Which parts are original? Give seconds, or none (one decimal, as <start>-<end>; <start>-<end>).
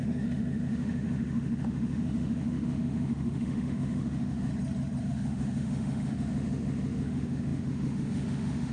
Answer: 4.5-5.0